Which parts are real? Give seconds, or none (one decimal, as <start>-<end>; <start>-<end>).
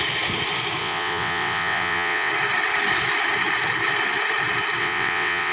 0.0-0.8; 2.3-4.8